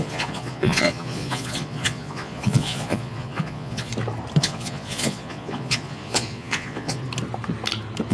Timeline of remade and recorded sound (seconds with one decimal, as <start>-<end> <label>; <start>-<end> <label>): 0.0-3.9 remade; 3.9-4.4 recorded; 4.4-7.0 remade; 7.0-8.1 recorded